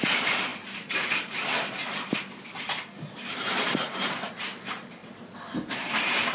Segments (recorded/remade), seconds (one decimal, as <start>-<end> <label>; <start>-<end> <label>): 0.0-5.0 remade; 5.0-5.7 recorded; 5.7-6.3 remade